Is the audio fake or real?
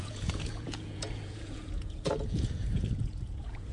fake